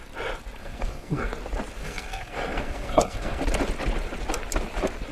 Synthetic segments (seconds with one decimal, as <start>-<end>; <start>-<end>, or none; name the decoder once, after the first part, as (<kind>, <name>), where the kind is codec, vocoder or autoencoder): 0.6-1.3 (codec, SNAC); 1.8-3.4